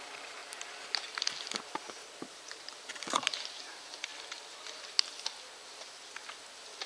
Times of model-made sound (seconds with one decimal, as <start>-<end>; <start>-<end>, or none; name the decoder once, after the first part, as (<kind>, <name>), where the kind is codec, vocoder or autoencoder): 0.0-0.4 (vocoder, BigVGAN v2); 2.5-4.1